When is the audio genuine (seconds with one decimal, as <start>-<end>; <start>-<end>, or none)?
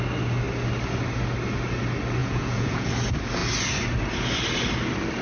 0.0-2.2; 2.9-5.2